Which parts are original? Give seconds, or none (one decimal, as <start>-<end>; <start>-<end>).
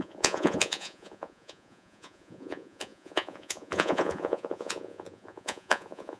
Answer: none